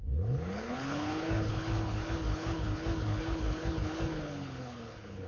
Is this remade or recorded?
remade